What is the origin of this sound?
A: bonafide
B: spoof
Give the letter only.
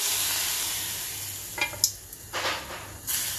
A